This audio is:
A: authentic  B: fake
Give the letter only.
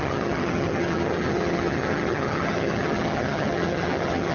B